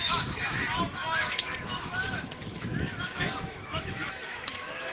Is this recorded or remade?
remade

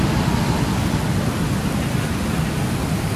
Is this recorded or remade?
recorded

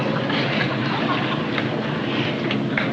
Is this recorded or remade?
recorded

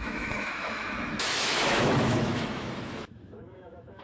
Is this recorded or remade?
remade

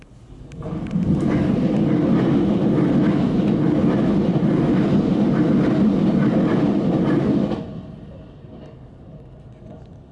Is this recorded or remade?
recorded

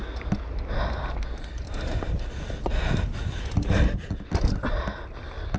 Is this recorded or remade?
recorded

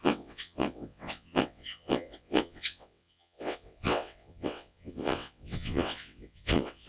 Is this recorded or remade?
remade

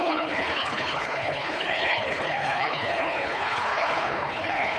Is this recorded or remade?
remade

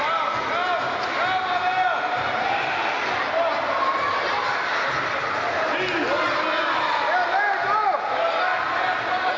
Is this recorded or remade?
recorded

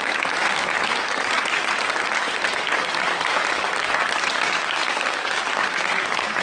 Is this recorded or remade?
remade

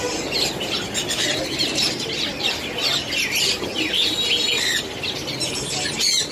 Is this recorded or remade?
recorded